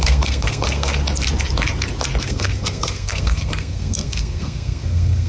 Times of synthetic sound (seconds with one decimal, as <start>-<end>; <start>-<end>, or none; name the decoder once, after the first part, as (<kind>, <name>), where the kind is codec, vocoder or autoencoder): 0.0-1.0 (codec, SNAC); 2.2-5.3